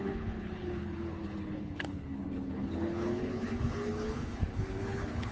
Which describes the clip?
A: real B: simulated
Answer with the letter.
B